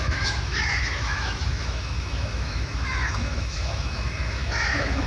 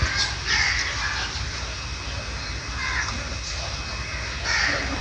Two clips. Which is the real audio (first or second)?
second